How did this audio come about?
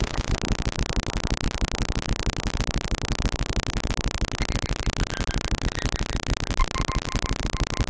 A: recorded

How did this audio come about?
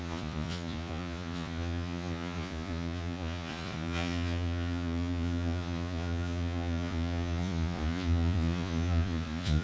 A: remade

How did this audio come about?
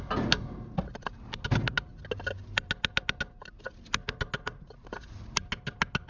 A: recorded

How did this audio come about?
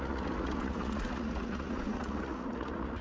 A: remade